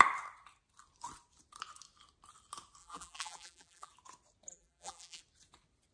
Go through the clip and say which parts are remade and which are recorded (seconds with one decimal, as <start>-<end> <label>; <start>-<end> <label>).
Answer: 0.0-2.8 recorded; 2.8-3.9 remade; 3.9-4.5 recorded; 4.5-5.2 remade; 5.2-5.9 recorded